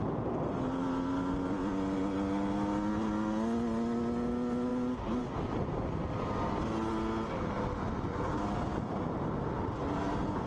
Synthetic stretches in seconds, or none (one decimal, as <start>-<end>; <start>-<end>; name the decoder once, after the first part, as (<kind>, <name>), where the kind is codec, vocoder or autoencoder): none